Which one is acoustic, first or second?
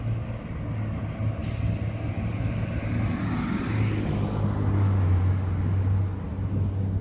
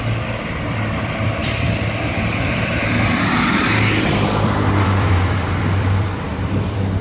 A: first